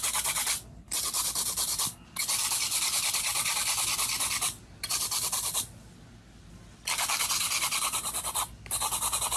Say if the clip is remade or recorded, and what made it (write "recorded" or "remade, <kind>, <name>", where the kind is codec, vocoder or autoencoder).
recorded